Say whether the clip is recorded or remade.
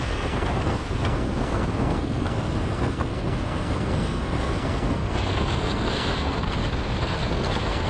remade